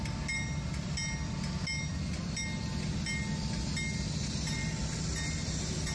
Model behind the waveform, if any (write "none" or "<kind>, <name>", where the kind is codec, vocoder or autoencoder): none